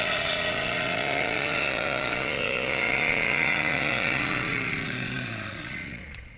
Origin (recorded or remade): remade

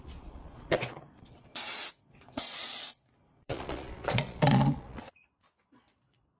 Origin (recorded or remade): remade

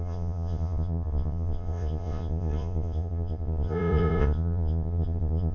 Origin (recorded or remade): remade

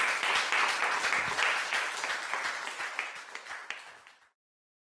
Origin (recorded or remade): recorded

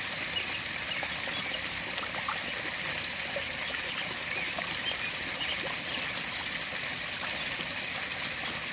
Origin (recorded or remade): recorded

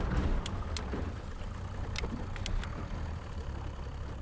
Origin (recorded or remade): recorded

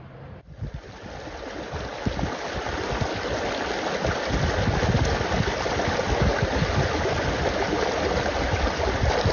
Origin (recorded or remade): recorded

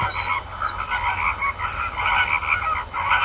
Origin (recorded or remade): recorded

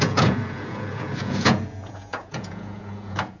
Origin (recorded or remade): remade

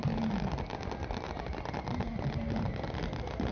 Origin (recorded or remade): recorded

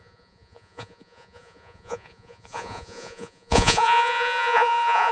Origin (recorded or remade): remade